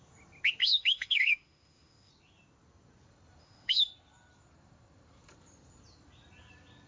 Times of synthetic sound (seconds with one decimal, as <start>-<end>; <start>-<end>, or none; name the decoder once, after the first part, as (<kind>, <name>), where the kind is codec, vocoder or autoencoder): 0.6-2.1 (autoencoder, DAC-VAE); 3.4-3.9